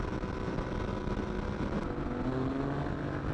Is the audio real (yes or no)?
yes